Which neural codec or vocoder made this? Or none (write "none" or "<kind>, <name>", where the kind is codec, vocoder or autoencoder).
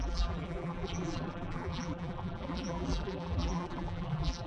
vocoder, BigVGAN v2